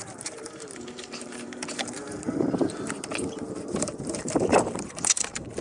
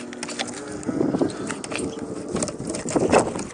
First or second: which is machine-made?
first